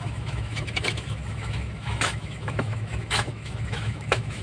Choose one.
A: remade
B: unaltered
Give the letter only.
A